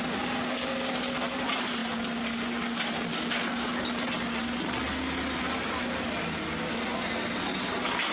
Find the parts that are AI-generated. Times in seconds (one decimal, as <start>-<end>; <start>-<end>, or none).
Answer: none